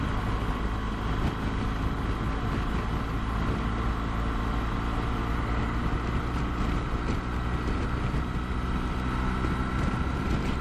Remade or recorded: recorded